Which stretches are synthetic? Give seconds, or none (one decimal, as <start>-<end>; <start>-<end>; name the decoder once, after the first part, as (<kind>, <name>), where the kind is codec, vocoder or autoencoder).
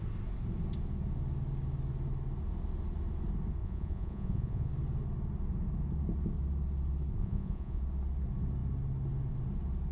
3.6-4.7 (vocoder, Vocos); 7.2-7.8